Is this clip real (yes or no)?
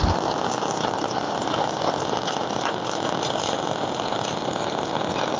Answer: yes